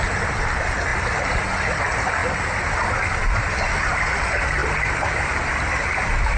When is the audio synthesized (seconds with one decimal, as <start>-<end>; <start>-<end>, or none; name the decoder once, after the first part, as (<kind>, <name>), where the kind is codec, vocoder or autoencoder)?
none

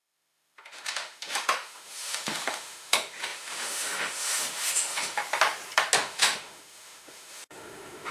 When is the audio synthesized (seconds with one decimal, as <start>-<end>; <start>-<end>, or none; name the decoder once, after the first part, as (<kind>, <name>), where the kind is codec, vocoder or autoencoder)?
0.0-5.2 (autoencoder, DAC-VAE); 6.0-8.1

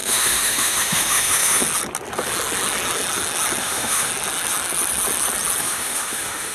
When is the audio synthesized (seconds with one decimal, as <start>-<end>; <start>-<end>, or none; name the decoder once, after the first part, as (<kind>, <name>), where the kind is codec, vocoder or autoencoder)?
0.0-1.6 (autoencoder, DAC-VAE); 3.6-4.1; 5.6-6.5

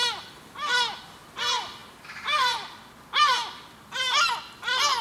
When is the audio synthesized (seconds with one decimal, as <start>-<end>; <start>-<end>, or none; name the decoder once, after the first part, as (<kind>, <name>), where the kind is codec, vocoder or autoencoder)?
none

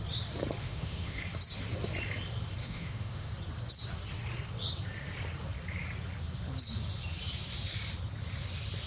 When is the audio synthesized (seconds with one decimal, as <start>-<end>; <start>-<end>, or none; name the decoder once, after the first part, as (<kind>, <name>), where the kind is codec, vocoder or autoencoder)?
0.6-1.2 (autoencoder, DAC-VAE); 2.6-3.3

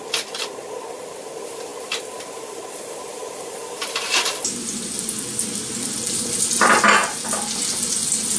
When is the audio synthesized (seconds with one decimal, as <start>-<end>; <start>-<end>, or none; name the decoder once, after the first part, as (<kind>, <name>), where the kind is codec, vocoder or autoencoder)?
none

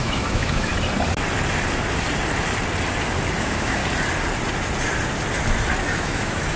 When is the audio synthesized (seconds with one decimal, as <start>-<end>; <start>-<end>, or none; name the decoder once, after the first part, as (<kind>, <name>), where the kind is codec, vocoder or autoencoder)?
0.0-0.7 (autoencoder, DAC-VAE); 3.4-3.8; 6.0-6.6